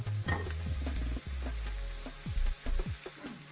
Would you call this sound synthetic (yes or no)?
no